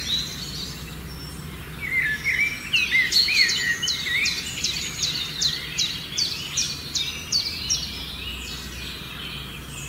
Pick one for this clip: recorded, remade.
recorded